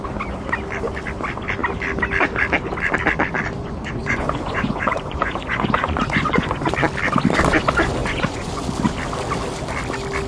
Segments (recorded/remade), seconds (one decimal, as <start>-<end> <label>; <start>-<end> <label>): 0.0-3.6 recorded; 3.6-6.7 remade; 6.7-8.0 recorded; 8.0-8.6 remade; 8.6-10.3 recorded